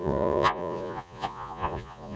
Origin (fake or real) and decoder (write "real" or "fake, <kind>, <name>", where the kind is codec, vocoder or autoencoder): fake, vocoder, Vocos